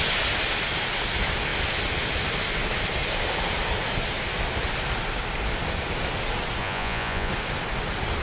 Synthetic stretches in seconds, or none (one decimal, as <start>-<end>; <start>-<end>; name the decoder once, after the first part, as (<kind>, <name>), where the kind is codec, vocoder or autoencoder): 6.6-7.3 (vocoder, Vocos)